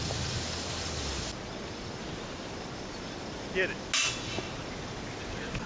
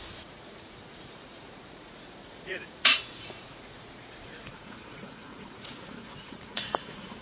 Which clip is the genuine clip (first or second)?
first